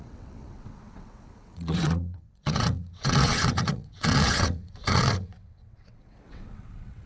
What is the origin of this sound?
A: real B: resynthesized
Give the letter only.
B